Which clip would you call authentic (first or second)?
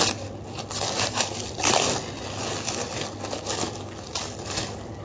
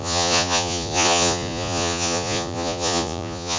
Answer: first